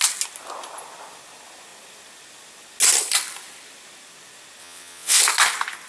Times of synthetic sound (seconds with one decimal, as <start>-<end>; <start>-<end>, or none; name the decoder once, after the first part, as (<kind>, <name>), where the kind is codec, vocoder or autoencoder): 4.6-5.2 (vocoder, WaveNeXt)